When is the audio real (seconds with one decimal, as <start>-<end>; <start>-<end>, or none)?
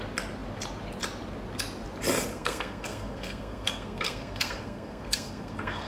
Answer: 0.0-2.3